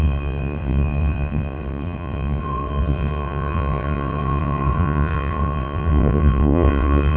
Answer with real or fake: fake